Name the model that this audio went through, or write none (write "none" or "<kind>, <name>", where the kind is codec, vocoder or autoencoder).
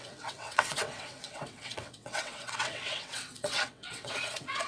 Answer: vocoder, WaveNeXt